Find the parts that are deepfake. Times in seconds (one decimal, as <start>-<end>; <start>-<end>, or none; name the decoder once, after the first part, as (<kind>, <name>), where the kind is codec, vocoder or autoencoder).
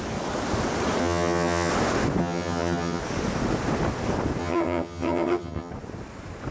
1.0-1.7 (vocoder, HiFi-GAN); 2.2-3.0; 4.4-5.7